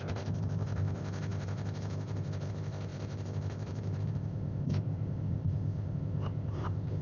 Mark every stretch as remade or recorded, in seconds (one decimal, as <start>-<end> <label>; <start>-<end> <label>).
0.0-7.0 remade